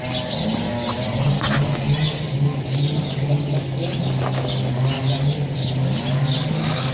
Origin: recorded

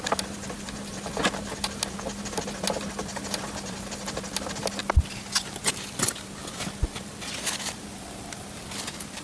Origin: recorded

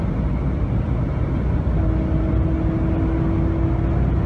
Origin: recorded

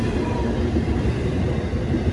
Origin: recorded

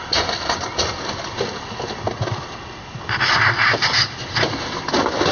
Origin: recorded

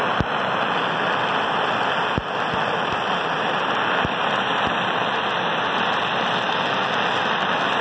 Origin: recorded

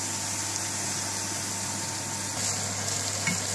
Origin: recorded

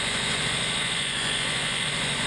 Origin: remade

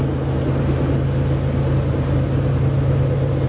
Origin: recorded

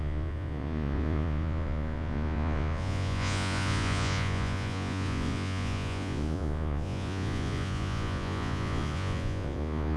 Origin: remade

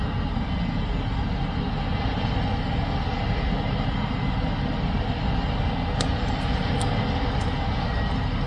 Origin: recorded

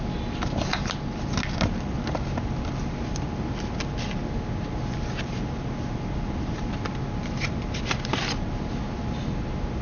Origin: recorded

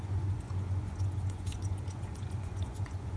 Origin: remade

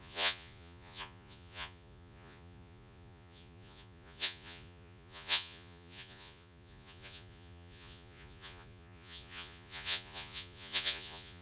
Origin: remade